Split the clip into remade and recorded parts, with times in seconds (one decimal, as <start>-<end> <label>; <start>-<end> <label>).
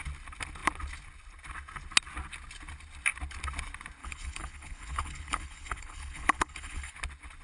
0.0-4.0 recorded; 4.0-6.9 remade; 6.9-7.4 recorded